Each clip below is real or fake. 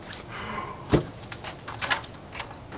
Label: real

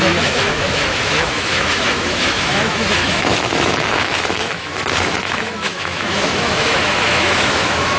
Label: fake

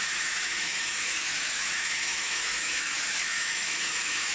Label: fake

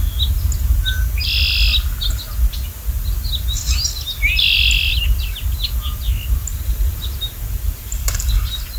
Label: real